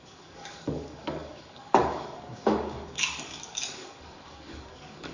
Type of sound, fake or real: fake